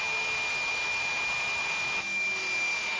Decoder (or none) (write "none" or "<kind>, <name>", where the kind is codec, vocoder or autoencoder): autoencoder, DAC-VAE